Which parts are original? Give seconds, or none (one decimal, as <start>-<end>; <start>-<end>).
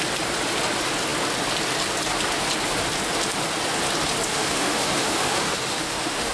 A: 0.0-4.3